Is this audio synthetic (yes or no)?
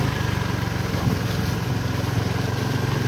yes